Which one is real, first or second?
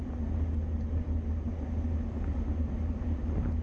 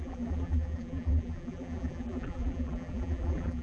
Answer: first